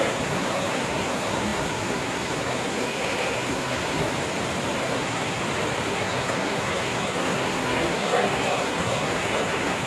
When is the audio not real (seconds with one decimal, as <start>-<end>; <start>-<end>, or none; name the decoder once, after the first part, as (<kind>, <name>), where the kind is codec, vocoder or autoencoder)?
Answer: 0.0-4.1 (codec, SNAC); 4.8-5.4; 5.9-9.9